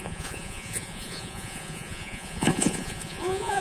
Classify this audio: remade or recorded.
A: remade